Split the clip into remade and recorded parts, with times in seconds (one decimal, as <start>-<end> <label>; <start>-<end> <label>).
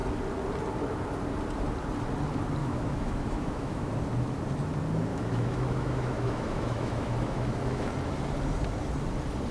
0.0-2.6 recorded; 2.6-3.9 remade; 3.9-5.1 recorded; 5.1-7.9 remade; 7.9-9.5 recorded